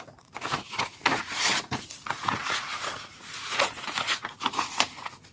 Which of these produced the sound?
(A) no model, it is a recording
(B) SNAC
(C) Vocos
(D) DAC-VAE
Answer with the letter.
C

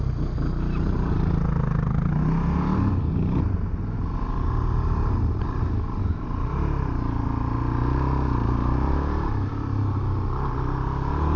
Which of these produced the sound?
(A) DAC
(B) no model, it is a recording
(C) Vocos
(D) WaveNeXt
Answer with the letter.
B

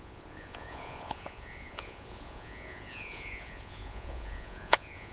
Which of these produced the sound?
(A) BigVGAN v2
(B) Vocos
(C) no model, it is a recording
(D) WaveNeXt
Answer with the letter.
B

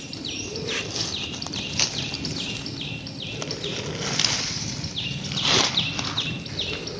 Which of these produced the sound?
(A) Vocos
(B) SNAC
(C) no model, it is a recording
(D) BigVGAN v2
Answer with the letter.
C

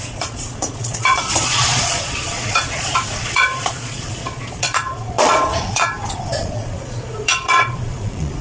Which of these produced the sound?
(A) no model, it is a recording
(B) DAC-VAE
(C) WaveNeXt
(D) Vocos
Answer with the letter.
D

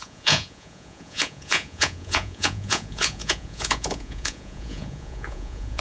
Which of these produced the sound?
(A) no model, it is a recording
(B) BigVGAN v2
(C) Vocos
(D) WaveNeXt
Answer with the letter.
C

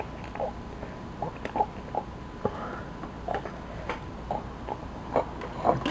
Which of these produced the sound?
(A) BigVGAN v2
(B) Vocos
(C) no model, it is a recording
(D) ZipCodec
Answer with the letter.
C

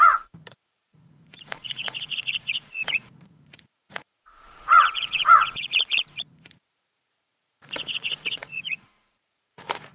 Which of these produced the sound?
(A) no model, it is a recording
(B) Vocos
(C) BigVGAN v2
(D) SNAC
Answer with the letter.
B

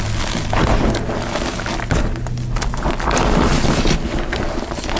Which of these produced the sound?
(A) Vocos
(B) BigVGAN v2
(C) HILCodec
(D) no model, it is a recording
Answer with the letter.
D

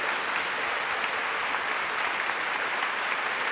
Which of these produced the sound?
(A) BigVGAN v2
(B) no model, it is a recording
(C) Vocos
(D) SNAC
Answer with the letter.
B